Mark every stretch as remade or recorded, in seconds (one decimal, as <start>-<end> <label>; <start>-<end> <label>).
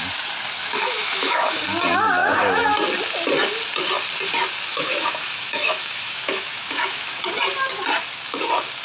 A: 0.0-0.6 recorded; 0.6-1.6 remade; 1.6-2.2 recorded; 2.2-2.7 remade; 2.7-4.7 recorded; 4.7-7.3 remade; 7.3-8.8 recorded